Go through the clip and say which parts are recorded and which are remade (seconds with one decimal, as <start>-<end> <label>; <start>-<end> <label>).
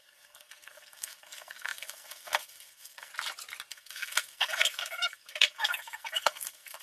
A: 0.0-3.1 remade; 3.1-3.7 recorded; 3.7-6.8 remade